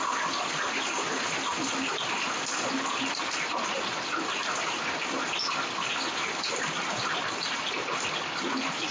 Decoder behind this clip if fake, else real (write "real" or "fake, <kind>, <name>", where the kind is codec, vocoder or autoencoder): real